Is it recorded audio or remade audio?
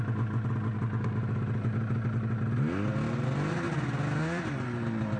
recorded